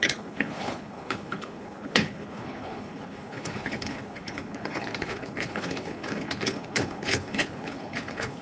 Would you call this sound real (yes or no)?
no